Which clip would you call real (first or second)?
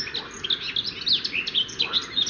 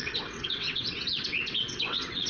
first